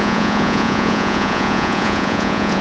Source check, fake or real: fake